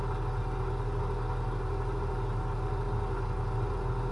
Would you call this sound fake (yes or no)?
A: no